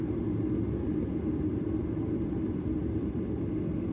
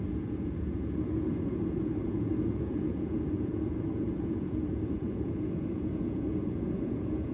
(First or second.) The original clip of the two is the first